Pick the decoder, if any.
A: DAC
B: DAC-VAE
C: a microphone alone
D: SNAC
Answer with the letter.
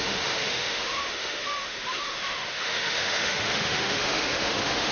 B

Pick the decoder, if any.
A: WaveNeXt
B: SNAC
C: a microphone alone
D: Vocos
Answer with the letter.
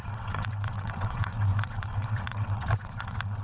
A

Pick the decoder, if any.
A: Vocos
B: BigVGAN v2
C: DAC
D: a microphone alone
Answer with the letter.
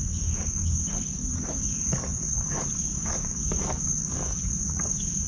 C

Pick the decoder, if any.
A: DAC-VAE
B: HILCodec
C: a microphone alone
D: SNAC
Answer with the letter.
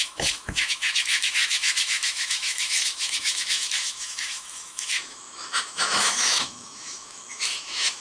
A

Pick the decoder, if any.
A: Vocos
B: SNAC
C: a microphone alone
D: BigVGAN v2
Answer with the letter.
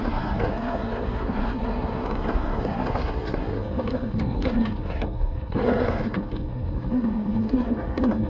B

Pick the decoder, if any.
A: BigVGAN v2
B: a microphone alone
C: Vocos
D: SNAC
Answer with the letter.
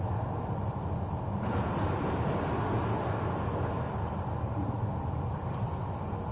B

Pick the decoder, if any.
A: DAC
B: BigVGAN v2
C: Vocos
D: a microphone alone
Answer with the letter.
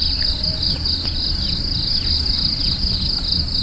D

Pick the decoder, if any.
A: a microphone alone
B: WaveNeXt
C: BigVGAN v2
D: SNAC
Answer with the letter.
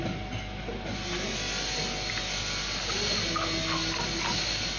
A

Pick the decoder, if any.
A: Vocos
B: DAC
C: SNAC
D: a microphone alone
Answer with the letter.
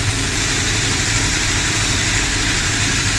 D